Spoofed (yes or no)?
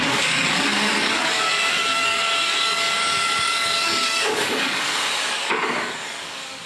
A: yes